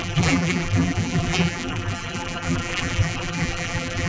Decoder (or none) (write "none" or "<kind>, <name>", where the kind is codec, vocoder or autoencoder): vocoder, BigVGAN v2